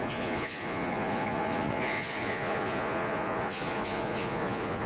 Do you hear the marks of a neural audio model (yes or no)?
yes